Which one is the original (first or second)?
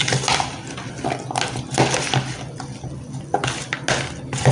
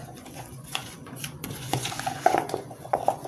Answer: first